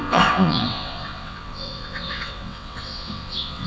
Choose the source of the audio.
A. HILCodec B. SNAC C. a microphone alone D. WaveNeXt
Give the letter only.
D